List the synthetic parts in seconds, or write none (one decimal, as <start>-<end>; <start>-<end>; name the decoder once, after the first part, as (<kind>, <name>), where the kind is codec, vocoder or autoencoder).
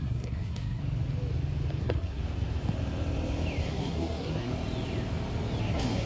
0.0-0.8 (codec, SNAC); 1.8-2.2; 3.6-4.5; 5.6-6.1